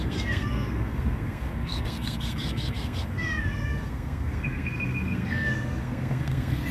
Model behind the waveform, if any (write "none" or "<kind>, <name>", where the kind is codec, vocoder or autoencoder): codec, SNAC